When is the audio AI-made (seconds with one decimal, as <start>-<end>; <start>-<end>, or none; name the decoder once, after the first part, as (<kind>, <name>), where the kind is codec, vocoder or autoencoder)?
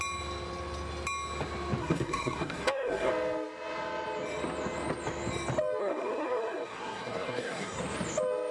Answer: 1.8-3.1 (codec, SNAC); 5.8-7.8